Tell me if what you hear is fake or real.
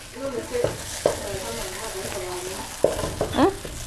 real